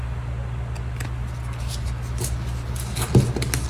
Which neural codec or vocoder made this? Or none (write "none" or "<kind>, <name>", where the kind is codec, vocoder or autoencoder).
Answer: none